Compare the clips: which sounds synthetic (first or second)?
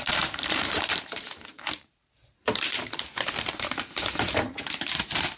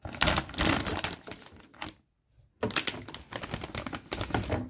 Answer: first